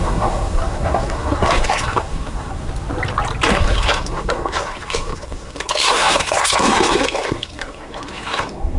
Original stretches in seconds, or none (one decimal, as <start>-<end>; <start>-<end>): 2.6-3.5